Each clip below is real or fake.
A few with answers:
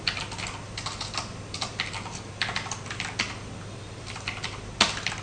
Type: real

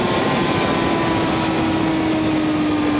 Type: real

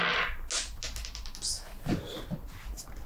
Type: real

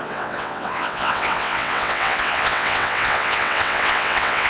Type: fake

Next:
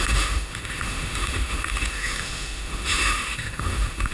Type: fake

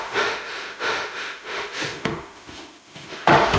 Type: fake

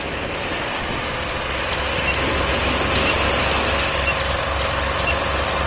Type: real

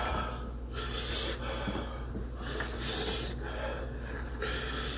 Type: real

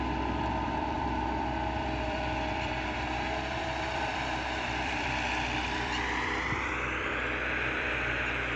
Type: fake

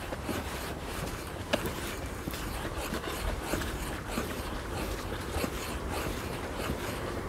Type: fake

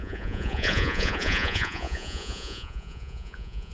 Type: fake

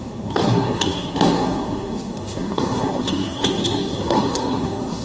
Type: fake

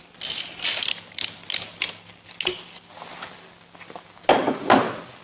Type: real